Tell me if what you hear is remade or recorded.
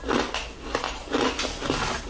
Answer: recorded